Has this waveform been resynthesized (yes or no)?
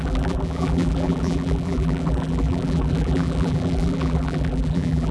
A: yes